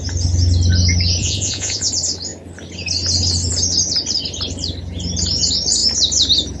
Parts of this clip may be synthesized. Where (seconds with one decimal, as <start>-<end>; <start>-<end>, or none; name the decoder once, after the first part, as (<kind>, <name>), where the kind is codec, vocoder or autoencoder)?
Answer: 1.2-1.9 (vocoder, Vocos)